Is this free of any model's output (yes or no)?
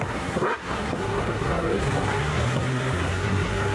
no